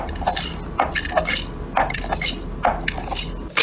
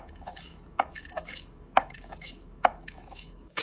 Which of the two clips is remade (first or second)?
second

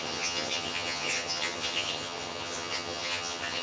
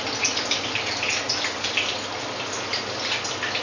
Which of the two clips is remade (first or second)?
first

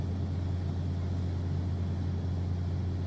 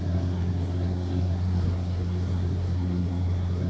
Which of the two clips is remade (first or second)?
second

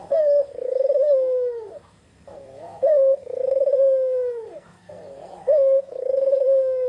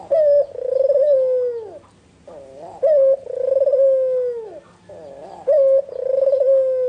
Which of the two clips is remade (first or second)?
first